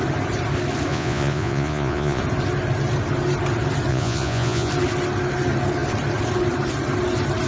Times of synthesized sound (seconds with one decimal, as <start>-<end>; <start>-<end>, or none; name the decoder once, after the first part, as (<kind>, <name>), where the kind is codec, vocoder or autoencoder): 0.9-2.2 (vocoder, Vocos); 3.9-4.7